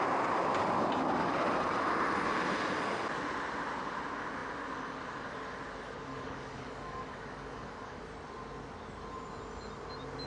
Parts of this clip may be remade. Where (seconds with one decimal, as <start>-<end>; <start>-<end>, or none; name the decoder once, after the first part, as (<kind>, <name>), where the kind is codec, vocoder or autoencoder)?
6.1-8.0 (codec, DAC)